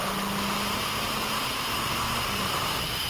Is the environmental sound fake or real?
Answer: real